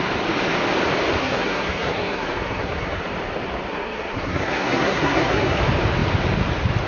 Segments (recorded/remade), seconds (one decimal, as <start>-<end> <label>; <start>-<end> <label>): 0.0-1.2 recorded; 1.2-3.0 remade; 3.0-3.7 recorded; 3.7-5.6 remade; 5.6-6.9 recorded

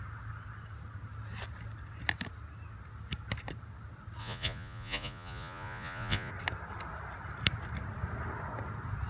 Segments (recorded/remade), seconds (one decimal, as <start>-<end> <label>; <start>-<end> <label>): 0.0-4.2 recorded; 4.2-6.3 remade; 6.3-9.1 recorded

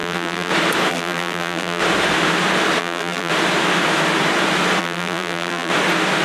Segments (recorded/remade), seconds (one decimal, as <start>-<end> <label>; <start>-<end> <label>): 0.0-0.5 remade; 0.5-0.9 recorded; 0.9-1.8 remade; 1.8-2.8 recorded; 2.8-3.3 remade; 3.3-4.8 recorded; 4.8-5.7 remade; 5.7-6.2 recorded

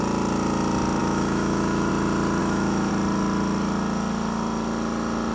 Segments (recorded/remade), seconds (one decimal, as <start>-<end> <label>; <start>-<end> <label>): 0.0-1.0 recorded; 1.0-1.9 remade; 1.9-2.4 recorded; 2.4-2.9 remade; 2.9-5.3 recorded